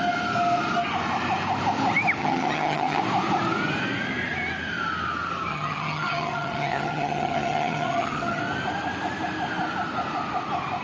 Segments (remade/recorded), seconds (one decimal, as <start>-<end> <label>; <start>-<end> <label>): 0.0-2.2 recorded; 2.2-3.0 remade; 3.0-5.5 recorded; 5.5-8.4 remade; 8.4-10.8 recorded